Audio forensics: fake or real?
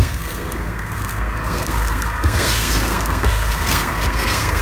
fake